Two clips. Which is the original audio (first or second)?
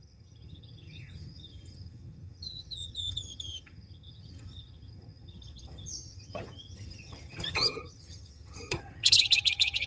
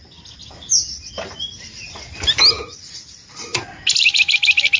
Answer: second